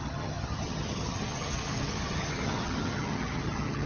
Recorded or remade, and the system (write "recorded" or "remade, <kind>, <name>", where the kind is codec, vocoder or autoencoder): remade, vocoder, HiFi-GAN